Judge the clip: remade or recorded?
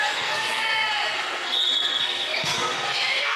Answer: remade